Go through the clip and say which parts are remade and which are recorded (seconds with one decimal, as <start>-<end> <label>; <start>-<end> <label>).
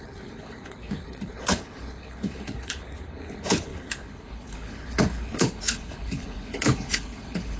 0.0-7.6 remade